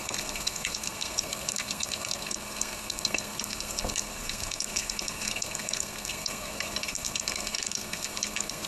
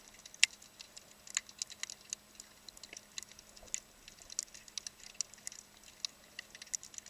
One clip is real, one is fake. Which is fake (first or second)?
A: first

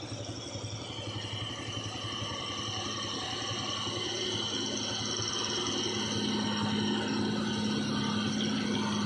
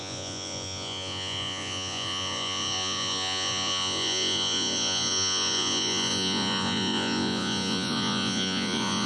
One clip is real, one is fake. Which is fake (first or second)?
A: second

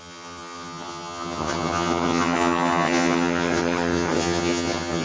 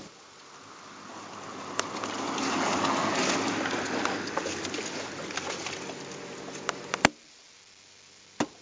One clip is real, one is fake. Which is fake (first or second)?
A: first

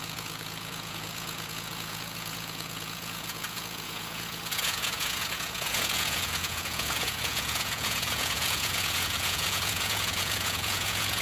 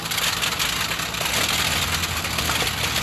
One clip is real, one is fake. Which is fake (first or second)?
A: first